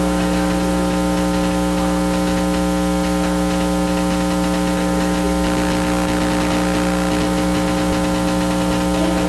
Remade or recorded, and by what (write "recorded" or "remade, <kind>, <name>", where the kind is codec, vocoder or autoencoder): recorded